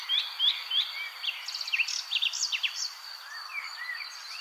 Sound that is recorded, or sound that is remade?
remade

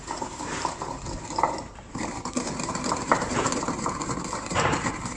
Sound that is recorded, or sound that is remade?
remade